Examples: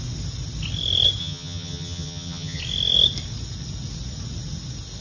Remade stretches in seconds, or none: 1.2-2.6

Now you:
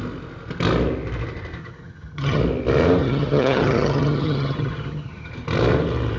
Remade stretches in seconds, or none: 1.6-2.4; 3.0-5.3